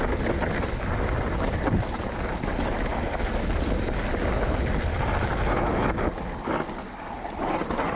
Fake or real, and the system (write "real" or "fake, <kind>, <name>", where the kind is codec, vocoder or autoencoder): real